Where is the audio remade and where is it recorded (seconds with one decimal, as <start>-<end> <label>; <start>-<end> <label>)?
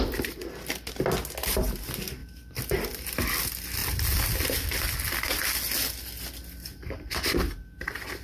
0.0-8.2 recorded